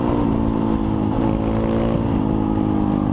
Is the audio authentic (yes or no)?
yes